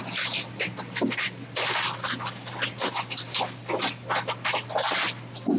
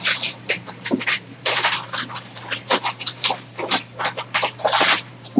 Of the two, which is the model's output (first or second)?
second